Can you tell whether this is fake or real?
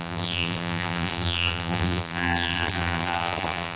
fake